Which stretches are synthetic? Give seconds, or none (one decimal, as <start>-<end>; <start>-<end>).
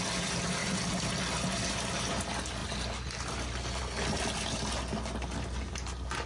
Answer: none